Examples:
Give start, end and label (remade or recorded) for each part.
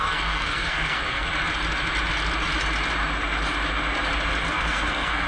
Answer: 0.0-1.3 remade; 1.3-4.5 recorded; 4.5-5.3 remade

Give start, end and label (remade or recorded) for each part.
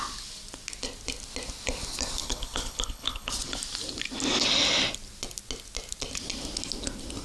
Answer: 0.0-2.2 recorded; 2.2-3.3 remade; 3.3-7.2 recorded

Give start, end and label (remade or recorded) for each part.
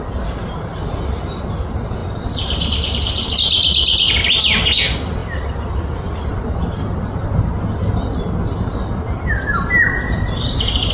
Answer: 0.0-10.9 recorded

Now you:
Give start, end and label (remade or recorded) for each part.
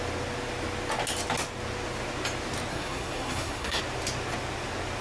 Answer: 0.0-2.7 recorded; 2.7-3.8 remade; 3.8-5.0 recorded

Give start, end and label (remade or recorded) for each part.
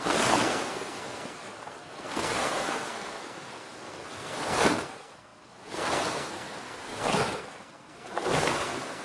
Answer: 0.0-9.0 remade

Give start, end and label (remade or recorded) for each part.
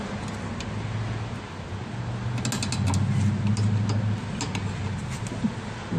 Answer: 0.0-6.0 recorded